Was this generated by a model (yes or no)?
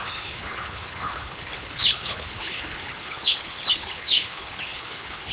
yes